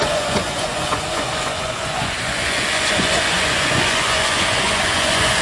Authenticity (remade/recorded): remade